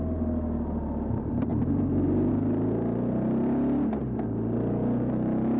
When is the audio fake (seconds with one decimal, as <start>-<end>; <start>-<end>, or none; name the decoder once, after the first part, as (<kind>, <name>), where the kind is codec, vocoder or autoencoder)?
none